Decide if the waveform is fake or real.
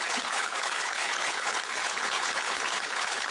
fake